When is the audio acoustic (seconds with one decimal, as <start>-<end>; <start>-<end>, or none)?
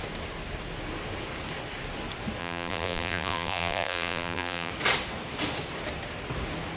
0.0-2.4; 4.7-6.8